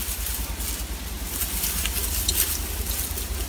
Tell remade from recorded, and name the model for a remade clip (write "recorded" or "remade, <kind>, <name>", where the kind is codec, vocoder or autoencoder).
recorded